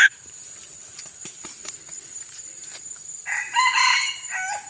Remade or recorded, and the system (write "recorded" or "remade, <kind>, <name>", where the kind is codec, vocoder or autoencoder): recorded